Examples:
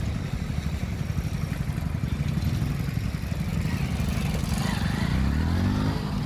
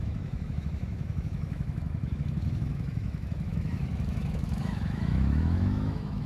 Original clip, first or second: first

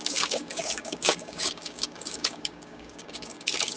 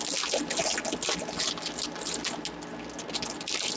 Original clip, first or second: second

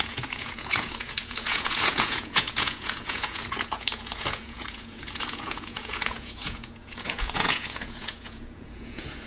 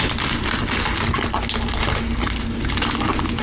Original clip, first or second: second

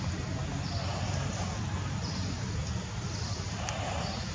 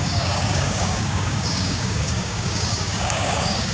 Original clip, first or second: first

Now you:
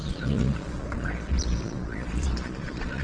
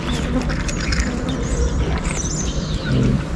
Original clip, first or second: second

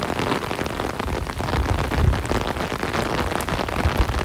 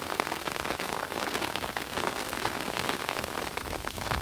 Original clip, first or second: first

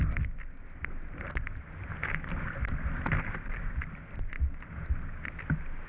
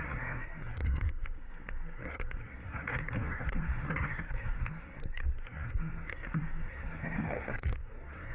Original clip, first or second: first